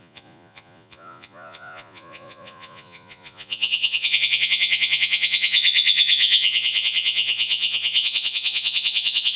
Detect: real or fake fake